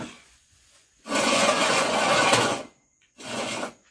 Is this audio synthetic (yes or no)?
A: yes